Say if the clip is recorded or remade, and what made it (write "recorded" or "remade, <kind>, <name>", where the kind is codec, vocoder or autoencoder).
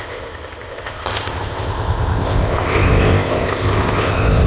remade, codec, ZipCodec